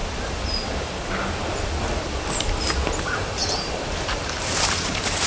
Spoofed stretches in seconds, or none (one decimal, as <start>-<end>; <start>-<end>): 3.0-5.3